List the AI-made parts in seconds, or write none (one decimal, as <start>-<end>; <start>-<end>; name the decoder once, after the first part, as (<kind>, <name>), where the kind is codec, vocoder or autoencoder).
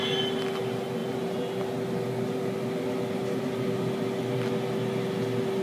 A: none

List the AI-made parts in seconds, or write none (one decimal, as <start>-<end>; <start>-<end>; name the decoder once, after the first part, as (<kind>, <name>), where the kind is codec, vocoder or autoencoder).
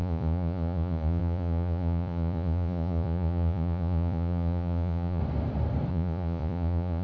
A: 0.0-5.2 (vocoder, Vocos); 5.9-7.0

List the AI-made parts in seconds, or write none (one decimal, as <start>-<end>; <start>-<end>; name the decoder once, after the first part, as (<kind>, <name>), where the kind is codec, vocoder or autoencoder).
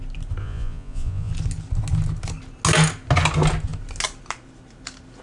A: 0.4-1.3 (vocoder, Vocos)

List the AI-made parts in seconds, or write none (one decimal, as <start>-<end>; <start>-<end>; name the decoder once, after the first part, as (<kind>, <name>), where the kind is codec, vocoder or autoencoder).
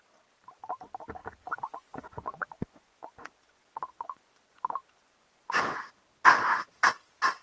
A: 1.2-5.6 (vocoder, Vocos)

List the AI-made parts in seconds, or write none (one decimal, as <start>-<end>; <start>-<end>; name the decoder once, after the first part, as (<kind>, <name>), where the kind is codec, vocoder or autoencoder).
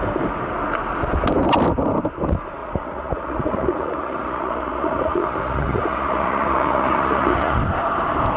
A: 2.6-7.6 (vocoder, Vocos)